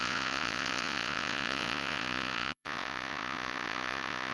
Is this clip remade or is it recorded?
remade